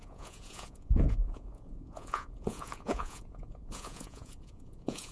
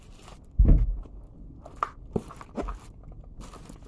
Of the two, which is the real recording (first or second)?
second